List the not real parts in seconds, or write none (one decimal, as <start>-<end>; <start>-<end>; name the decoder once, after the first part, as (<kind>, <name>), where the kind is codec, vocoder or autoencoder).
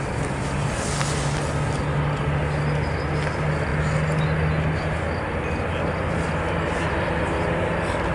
none